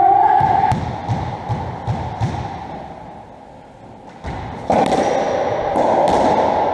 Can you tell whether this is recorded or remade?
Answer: recorded